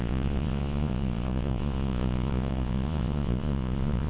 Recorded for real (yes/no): no